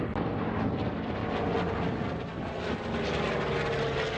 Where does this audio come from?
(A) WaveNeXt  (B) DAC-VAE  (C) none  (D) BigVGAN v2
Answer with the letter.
C